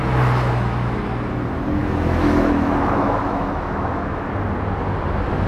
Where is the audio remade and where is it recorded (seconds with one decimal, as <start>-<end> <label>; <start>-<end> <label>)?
0.0-1.8 recorded; 1.8-4.3 remade; 4.3-5.5 recorded